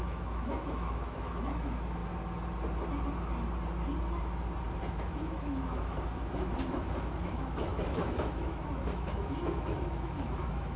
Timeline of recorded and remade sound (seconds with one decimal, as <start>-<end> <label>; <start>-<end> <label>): 0.0-2.0 remade; 2.0-4.9 recorded; 4.9-10.8 remade